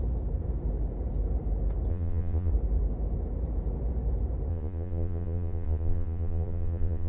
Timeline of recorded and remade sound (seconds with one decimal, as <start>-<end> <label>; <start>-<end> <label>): 0.0-1.9 recorded; 1.9-2.5 remade; 2.5-4.5 recorded; 4.5-7.1 remade